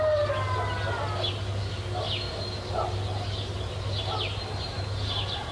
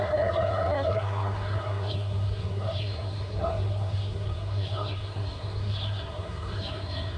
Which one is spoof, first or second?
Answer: second